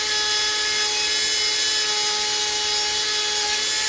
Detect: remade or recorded recorded